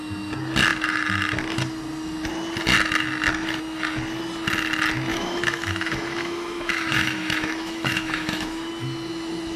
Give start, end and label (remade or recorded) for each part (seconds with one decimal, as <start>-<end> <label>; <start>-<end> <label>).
0.0-5.1 recorded; 5.1-8.7 remade; 8.7-9.6 recorded